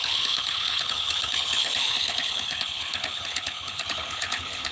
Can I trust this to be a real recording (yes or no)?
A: no